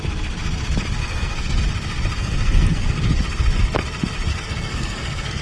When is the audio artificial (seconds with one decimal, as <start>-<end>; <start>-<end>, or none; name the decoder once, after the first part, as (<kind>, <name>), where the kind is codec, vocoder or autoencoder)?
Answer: 1.0-1.6 (codec, SNAC); 2.2-3.2; 4.3-5.4